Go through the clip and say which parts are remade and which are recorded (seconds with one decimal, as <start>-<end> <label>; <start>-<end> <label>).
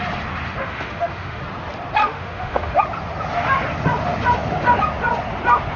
0.0-0.6 recorded; 0.6-1.4 remade; 1.4-2.0 recorded; 2.0-2.8 remade; 2.8-5.8 recorded